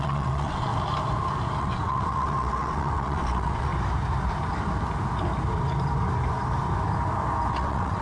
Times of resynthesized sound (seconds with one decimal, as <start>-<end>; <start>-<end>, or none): 0.0-0.7; 1.6-3.7; 7.5-8.0